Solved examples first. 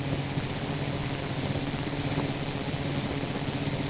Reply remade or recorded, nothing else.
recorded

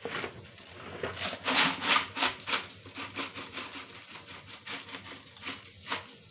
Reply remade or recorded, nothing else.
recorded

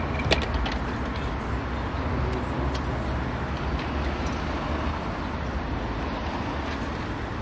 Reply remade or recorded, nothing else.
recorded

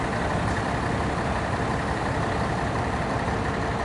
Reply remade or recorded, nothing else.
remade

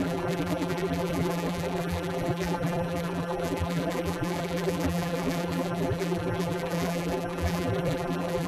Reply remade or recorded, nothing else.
remade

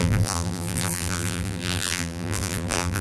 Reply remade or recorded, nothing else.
remade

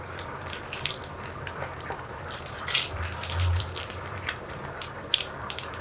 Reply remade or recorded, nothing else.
remade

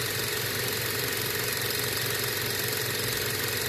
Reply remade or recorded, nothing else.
recorded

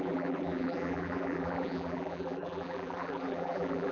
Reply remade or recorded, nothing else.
remade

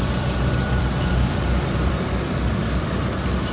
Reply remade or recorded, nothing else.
remade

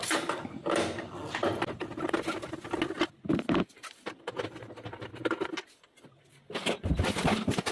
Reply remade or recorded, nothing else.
recorded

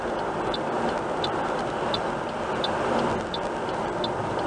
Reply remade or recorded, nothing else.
recorded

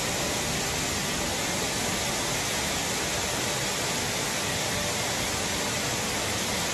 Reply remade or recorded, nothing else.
recorded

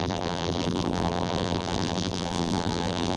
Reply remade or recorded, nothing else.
remade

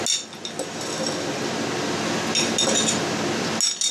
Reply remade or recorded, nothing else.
recorded